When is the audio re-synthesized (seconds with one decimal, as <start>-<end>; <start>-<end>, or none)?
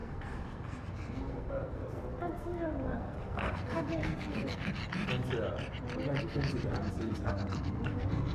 0.0-4.8; 6.2-8.3